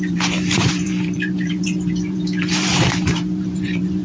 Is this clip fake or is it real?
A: fake